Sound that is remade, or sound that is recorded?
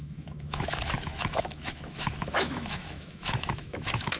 remade